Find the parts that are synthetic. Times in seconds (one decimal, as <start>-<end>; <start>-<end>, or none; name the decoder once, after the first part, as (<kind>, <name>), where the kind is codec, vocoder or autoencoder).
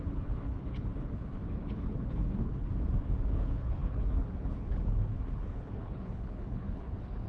0.0-2.7 (codec, HILCodec); 3.2-7.3